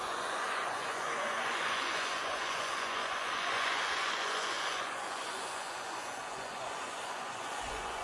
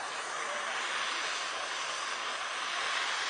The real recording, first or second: second